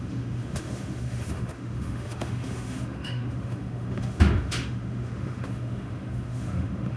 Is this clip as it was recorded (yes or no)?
no